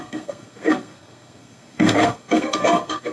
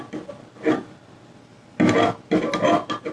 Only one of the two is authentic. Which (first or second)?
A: second